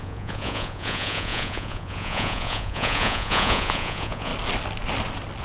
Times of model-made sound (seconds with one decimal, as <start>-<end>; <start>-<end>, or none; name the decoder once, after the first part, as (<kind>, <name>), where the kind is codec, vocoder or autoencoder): 0.0-4.3 (vocoder, Vocos)